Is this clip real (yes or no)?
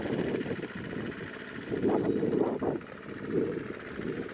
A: yes